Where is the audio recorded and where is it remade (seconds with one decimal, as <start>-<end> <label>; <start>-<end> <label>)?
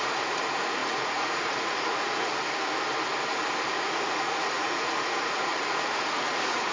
0.0-2.3 remade; 2.3-3.7 recorded; 3.7-6.7 remade